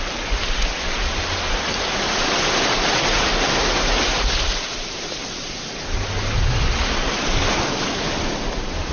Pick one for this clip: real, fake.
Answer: real